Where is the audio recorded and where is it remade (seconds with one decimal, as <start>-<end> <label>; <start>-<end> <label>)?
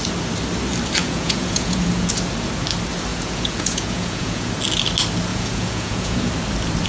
0.0-1.0 recorded; 1.0-2.1 remade; 2.1-3.1 recorded; 3.1-4.5 remade; 4.5-5.3 recorded; 5.3-6.3 remade; 6.3-6.9 recorded